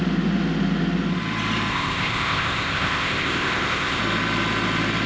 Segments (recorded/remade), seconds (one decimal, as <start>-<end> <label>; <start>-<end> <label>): 0.0-1.7 recorded; 1.7-4.0 remade; 4.0-5.1 recorded